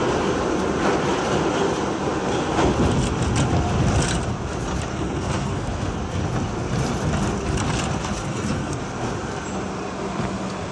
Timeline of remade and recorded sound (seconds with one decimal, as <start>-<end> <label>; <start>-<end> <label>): 0.0-4.9 recorded; 4.9-5.9 remade; 5.9-8.2 recorded; 8.2-8.8 remade; 8.8-10.7 recorded